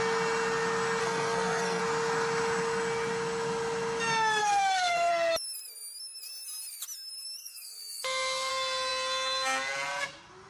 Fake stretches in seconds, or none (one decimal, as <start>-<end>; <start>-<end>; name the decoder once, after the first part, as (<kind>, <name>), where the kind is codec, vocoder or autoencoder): 1.0-1.8 (codec, SNAC); 4.4-5.1; 7.4-8.5